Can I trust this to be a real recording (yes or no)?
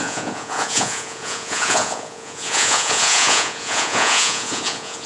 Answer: no